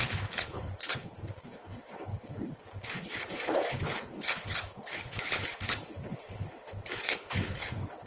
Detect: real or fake fake